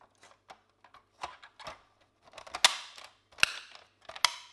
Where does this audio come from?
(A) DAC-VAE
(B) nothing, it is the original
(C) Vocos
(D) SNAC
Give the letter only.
B